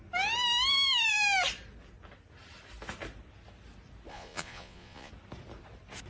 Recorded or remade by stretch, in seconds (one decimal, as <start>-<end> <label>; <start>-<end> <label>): 0.0-4.1 recorded; 4.1-5.1 remade; 5.1-6.1 recorded